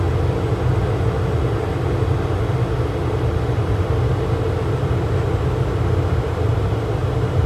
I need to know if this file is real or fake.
real